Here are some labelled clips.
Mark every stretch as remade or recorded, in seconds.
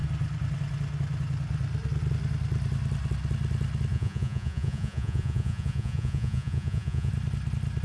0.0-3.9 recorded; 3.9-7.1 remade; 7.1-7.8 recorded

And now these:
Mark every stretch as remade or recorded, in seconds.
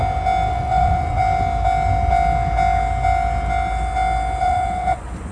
0.0-0.5 recorded; 0.5-1.2 remade; 1.2-4.4 recorded; 4.4-5.3 remade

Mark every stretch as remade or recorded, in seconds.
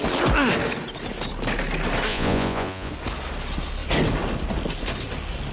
0.0-2.1 recorded; 2.1-2.9 remade; 2.9-5.5 recorded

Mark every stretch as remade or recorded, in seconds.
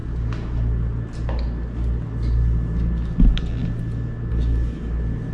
0.0-5.3 recorded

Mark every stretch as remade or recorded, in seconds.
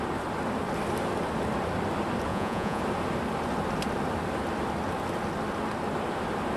0.0-2.3 recorded; 2.3-2.8 remade; 2.8-6.6 recorded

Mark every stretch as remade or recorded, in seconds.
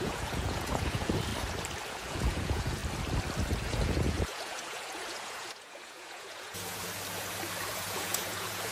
0.0-1.3 remade; 1.3-1.9 recorded; 1.9-2.8 remade; 2.8-3.6 recorded; 3.6-6.8 remade; 6.8-7.7 recorded; 7.7-8.7 remade